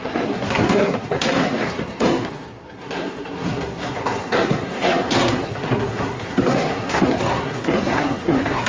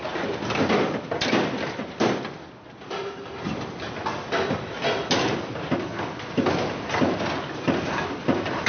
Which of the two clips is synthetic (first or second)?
first